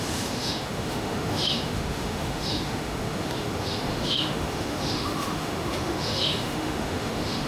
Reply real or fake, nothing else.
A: fake